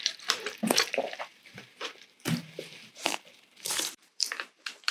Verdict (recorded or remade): remade